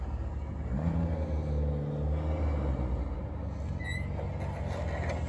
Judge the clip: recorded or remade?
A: recorded